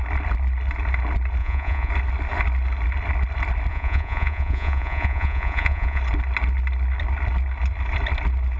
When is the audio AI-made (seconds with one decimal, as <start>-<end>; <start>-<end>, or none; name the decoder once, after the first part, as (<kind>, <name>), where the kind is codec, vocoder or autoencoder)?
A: 1.4-1.9 (vocoder, Vocos); 3.7-6.0